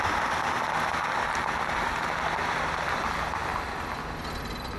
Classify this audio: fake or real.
real